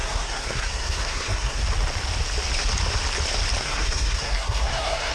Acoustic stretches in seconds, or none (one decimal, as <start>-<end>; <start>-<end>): 1.6-3.6